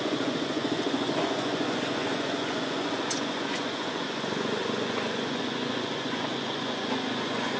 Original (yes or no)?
no